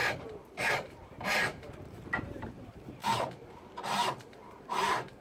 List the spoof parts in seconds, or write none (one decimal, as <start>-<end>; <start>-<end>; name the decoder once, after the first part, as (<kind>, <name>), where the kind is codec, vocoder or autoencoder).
0.6-3.0 (vocoder, BigVGAN v2); 4.3-5.2